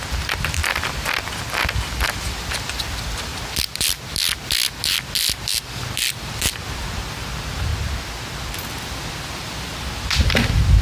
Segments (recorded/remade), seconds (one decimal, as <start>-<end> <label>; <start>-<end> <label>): 0.0-0.6 remade; 0.6-2.4 recorded; 2.4-3.3 remade; 3.3-5.6 recorded; 5.6-7.7 remade; 7.7-8.7 recorded; 8.7-10.8 remade